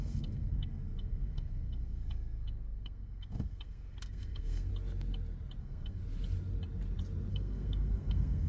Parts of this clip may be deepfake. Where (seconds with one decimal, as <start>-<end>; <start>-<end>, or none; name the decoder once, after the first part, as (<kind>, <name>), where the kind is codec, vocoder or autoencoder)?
0.0-4.7 (codec, SNAC); 5.6-6.0; 7.3-8.5